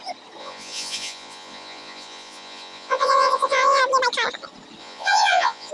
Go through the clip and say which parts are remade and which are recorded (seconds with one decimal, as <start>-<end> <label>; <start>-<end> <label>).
0.0-0.4 recorded; 0.4-3.8 remade; 3.8-4.8 recorded; 4.8-5.7 remade